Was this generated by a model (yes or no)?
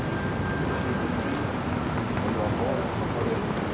no